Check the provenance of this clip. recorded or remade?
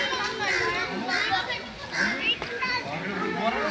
recorded